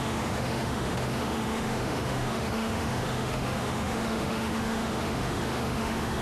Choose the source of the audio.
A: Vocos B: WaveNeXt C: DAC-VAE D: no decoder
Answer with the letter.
C